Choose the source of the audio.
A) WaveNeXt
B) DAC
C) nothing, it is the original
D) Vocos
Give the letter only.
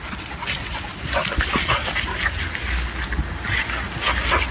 C